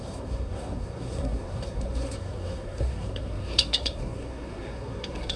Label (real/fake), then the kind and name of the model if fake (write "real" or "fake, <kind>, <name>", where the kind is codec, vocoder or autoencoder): fake, codec, SNAC